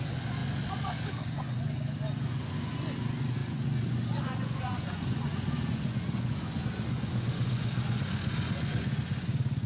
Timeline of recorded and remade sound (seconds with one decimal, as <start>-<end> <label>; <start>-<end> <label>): 0.0-9.7 remade